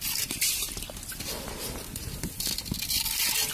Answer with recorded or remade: recorded